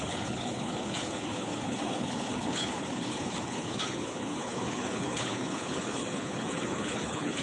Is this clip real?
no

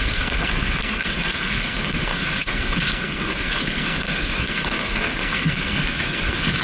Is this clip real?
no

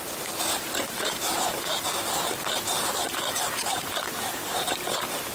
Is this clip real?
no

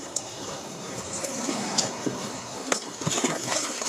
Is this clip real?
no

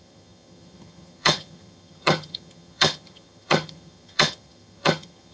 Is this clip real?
no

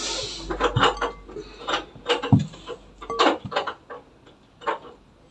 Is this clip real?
yes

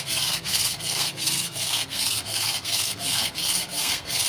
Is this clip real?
no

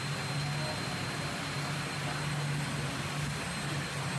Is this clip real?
yes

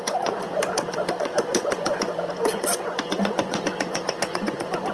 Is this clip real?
no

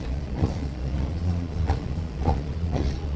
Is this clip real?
no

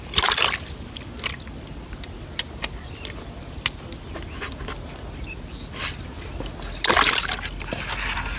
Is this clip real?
yes